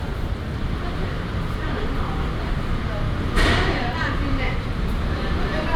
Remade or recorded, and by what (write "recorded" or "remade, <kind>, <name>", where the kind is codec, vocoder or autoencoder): remade, vocoder, BigVGAN v2